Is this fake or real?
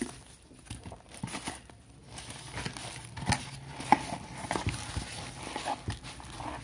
real